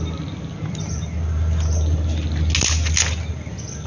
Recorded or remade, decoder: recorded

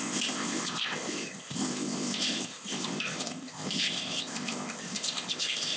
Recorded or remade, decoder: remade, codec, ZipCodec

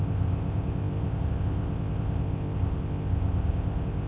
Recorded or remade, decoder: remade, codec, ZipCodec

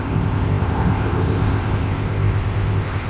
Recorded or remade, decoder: remade, codec, ZipCodec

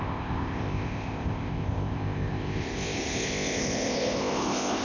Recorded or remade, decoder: remade, codec, ZipCodec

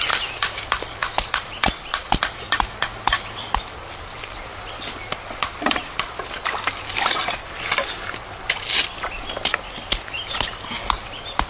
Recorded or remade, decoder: recorded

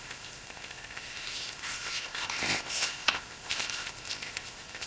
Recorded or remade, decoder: remade, codec, ZipCodec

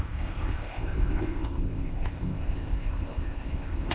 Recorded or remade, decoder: remade, codec, ZipCodec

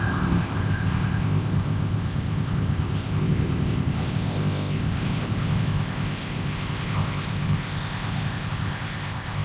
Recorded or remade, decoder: remade, codec, ZipCodec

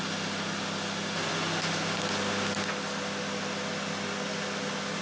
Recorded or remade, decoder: recorded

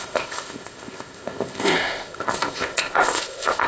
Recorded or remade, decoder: remade, codec, ZipCodec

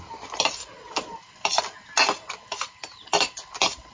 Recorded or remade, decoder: recorded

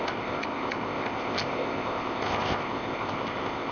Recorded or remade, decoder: remade, codec, ZipCodec